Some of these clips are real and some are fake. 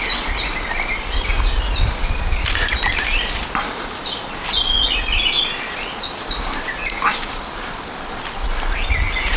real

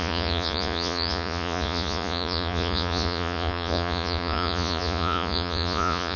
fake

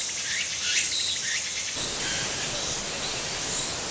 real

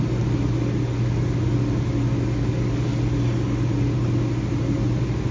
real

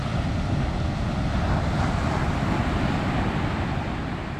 real